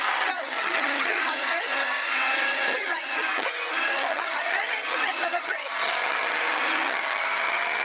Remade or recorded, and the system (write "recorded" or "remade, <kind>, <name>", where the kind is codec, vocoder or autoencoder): remade, vocoder, HiFi-GAN